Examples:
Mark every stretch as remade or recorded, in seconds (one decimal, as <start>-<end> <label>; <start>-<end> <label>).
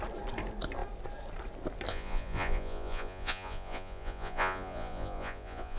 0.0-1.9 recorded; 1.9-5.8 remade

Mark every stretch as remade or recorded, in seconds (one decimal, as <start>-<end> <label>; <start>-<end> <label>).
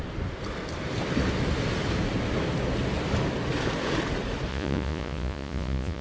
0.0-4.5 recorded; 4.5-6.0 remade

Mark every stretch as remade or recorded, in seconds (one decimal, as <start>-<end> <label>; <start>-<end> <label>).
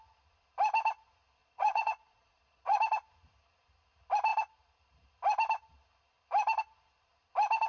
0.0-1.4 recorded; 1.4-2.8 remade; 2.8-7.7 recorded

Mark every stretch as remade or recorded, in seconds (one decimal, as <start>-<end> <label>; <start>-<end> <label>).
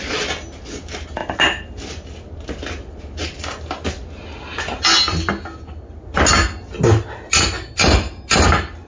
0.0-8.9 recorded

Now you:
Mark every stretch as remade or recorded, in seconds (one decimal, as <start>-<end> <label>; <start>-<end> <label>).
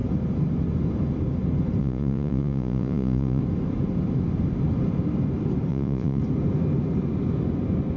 0.0-1.8 recorded; 1.8-3.4 remade; 3.4-5.7 recorded; 5.7-6.2 remade; 6.2-8.0 recorded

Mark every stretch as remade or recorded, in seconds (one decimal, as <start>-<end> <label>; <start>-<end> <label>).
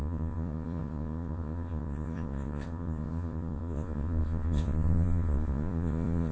0.0-6.3 remade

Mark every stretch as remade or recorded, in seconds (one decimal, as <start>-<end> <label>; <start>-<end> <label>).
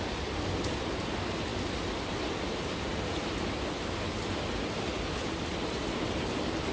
0.0-6.7 recorded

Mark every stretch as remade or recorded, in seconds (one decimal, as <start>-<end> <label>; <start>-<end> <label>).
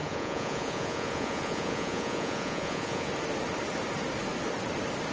0.0-3.1 remade; 3.1-5.1 recorded